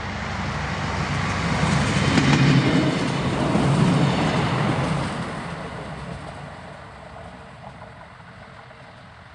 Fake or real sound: real